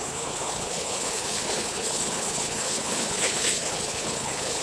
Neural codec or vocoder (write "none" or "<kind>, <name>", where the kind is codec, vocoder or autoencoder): codec, HILCodec